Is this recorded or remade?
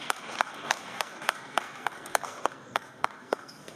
remade